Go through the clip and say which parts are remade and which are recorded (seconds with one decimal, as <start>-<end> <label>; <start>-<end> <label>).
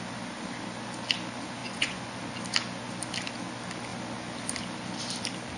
0.0-1.6 recorded; 1.6-2.2 remade; 2.2-5.6 recorded